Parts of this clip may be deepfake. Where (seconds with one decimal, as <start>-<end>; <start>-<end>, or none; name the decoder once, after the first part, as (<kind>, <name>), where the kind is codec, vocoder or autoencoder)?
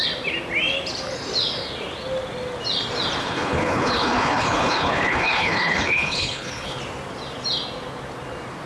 3.2-6.8 (codec, HILCodec)